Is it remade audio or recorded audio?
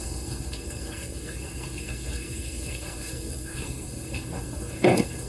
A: remade